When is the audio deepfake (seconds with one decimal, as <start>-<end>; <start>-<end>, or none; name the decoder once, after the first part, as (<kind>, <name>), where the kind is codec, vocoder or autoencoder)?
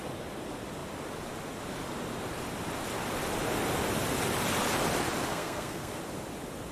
5.3-6.0 (codec, SNAC)